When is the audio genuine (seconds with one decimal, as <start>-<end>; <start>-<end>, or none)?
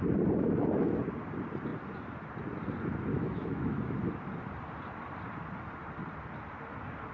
0.0-3.1; 4.0-7.1